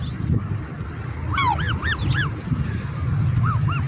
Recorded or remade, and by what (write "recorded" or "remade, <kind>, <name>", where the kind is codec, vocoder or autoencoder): recorded